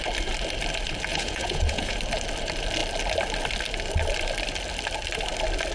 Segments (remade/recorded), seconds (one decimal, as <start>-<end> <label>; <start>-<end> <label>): 0.0-1.1 recorded; 1.1-2.0 remade; 2.0-5.7 recorded